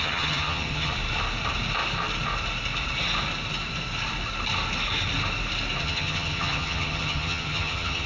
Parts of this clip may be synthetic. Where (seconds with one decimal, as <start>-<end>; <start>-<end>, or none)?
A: 0.0-0.9; 5.8-8.1